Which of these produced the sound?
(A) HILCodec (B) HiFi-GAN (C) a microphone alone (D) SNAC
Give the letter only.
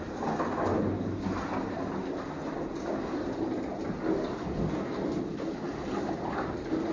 C